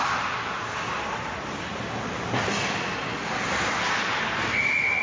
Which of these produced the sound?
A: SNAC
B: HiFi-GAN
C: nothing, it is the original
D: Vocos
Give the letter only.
C